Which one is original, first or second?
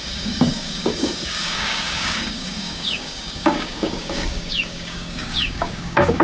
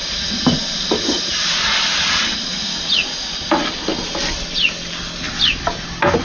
second